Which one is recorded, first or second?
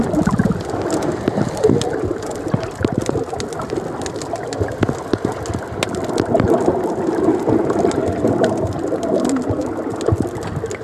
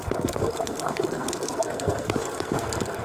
first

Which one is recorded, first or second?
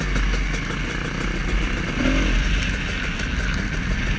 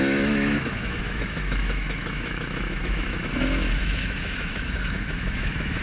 first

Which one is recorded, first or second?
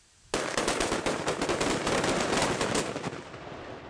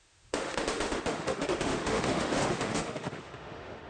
first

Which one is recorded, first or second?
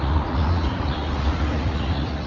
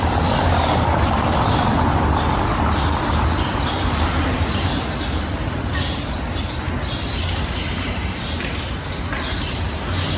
second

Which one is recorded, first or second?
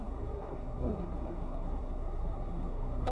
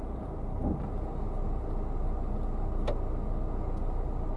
second